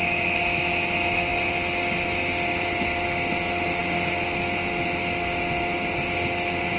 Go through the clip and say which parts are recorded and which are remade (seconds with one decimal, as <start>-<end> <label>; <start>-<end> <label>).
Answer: 0.0-6.8 recorded